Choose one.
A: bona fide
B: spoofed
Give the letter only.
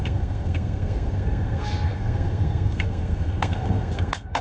B